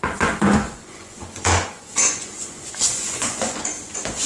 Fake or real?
fake